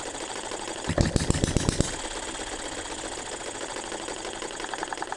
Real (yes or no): yes